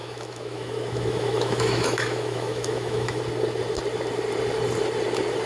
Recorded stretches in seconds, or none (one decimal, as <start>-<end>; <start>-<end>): 3.2-5.5